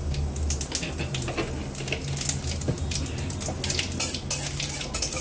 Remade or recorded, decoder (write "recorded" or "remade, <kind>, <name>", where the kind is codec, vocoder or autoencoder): recorded